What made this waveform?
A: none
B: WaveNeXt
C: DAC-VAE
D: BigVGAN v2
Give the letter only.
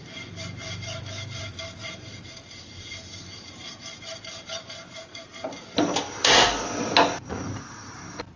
D